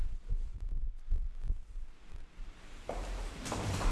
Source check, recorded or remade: remade